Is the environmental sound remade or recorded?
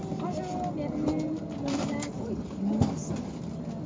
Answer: recorded